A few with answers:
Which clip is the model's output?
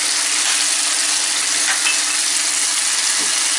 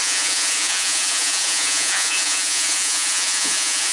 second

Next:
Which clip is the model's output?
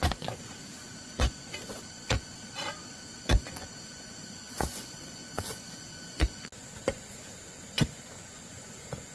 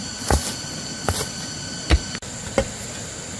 first